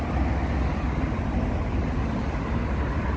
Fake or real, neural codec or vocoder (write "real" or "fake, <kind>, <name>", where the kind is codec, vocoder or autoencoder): real